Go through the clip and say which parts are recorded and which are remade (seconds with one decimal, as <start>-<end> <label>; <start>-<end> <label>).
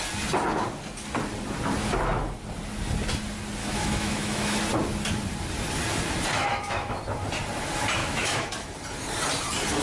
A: 0.0-3.6 recorded; 3.6-4.6 remade; 4.6-6.3 recorded; 6.3-7.0 remade; 7.0-8.0 recorded; 8.0-8.7 remade; 8.7-9.8 recorded